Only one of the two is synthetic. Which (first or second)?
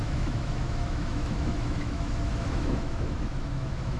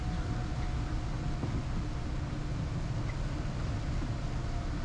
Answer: first